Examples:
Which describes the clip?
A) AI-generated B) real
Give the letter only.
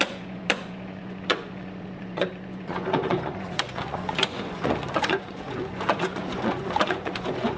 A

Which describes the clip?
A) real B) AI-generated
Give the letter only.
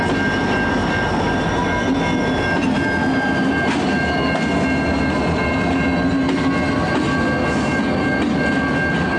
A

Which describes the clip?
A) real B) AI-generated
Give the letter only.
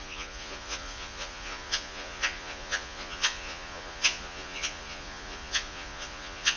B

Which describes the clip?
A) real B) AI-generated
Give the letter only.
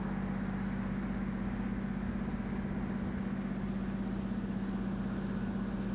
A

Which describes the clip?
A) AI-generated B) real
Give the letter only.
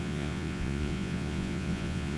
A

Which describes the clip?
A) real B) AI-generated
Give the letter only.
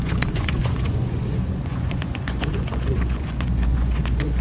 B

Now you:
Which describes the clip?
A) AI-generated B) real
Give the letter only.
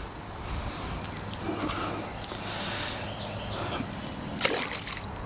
B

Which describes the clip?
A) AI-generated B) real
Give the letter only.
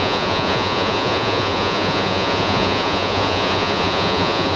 A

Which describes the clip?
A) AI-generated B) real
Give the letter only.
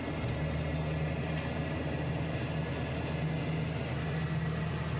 B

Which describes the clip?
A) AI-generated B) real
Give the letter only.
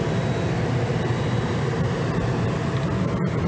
B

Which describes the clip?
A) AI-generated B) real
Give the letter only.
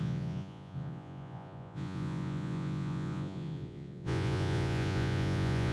A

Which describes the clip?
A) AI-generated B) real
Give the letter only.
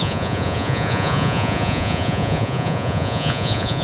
A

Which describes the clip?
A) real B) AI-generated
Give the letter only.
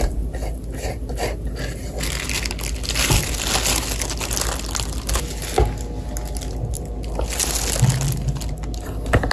A